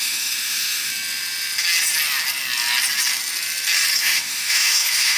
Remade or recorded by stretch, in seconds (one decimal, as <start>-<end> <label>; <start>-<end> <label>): 0.0-0.9 remade; 0.9-4.0 recorded; 4.0-5.2 remade